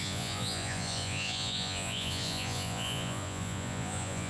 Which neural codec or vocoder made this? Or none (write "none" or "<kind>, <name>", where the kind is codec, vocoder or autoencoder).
vocoder, Vocos